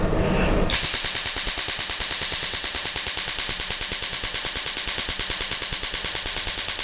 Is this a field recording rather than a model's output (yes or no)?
yes